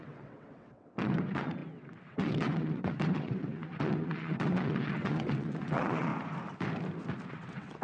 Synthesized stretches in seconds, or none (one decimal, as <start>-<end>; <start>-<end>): 0.0-6.1; 7.3-7.8